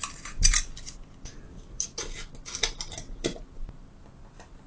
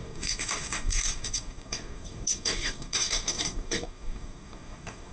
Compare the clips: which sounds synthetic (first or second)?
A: second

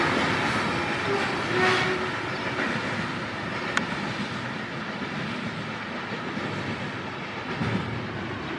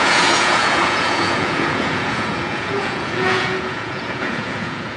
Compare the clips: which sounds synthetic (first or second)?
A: second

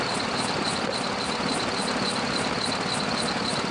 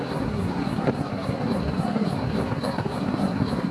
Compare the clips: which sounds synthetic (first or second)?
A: second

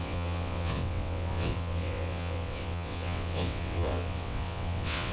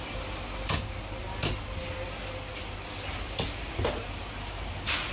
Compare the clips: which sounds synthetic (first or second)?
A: first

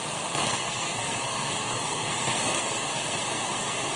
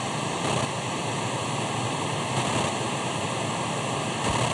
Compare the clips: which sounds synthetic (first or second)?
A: first